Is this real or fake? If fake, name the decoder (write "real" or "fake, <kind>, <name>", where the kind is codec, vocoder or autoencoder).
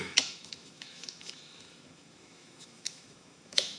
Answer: fake, autoencoder, DAC-VAE